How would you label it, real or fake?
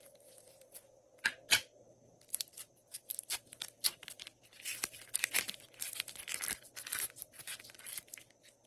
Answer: real